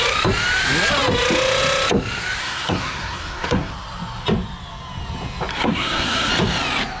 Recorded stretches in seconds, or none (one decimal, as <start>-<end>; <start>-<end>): 0.0-2.4; 3.7-5.5; 6.3-7.0

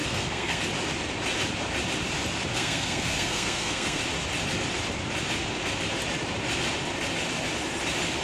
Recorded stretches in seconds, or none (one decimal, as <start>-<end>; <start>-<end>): 0.6-2.5; 4.0-8.2

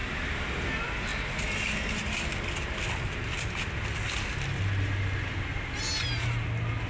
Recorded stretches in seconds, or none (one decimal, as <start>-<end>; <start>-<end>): 0.0-6.9

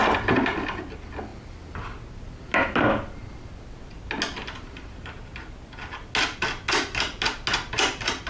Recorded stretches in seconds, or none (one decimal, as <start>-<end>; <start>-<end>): 0.0-8.3

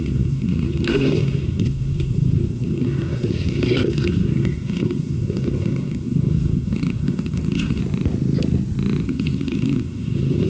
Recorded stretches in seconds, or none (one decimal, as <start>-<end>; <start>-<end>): 7.8-9.0

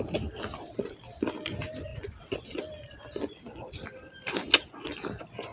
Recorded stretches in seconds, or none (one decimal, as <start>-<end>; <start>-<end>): 0.0-5.5

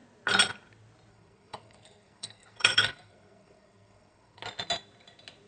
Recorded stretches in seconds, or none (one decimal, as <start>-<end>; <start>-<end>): 0.0-1.1; 4.4-5.5